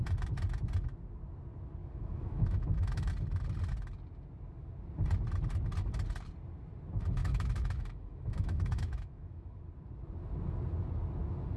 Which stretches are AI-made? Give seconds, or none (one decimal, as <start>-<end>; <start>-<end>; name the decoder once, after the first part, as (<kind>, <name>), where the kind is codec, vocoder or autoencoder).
1.8-3.1 (autoencoder, DAC-VAE); 7.2-9.6